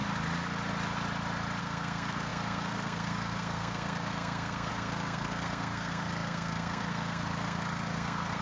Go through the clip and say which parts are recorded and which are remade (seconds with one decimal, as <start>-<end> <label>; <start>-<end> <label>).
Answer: 0.0-1.6 recorded; 1.6-8.4 remade